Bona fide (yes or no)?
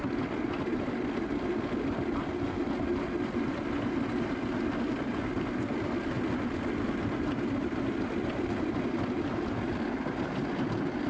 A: yes